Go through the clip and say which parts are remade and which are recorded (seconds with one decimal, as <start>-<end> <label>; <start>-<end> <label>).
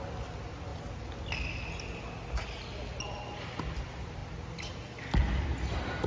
0.0-6.1 recorded